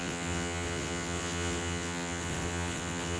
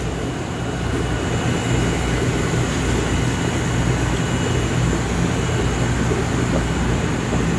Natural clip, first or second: second